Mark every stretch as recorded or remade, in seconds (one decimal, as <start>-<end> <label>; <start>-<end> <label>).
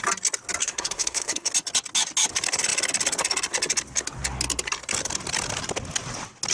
0.0-0.6 recorded; 0.6-1.5 remade; 1.5-6.5 recorded